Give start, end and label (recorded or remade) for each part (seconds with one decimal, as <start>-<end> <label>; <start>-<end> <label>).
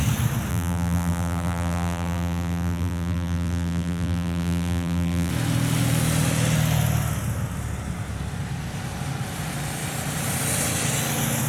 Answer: 0.0-0.5 recorded; 0.5-5.3 remade; 5.3-11.5 recorded